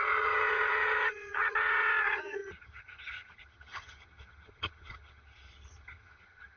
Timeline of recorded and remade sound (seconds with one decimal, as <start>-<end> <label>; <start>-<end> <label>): 0.0-6.6 remade